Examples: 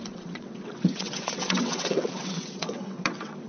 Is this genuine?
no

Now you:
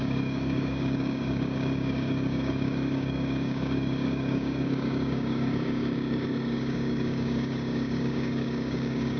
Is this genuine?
no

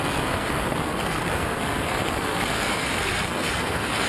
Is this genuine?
no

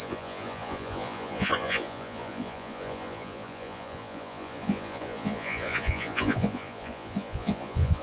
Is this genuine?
no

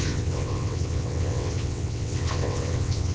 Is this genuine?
no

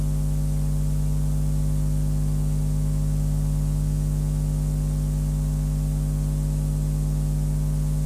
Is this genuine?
yes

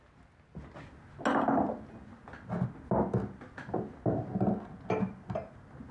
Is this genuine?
yes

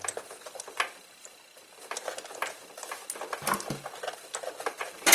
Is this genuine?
yes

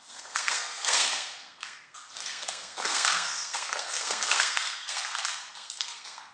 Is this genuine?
no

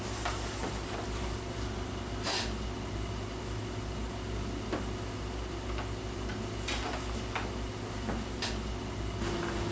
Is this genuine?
yes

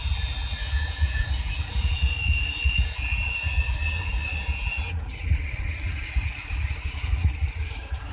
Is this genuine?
no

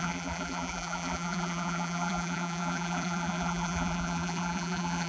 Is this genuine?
no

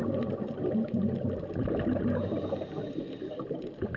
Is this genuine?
yes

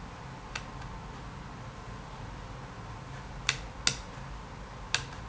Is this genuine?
yes